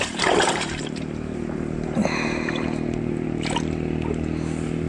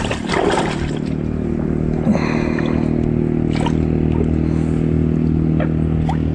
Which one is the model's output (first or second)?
first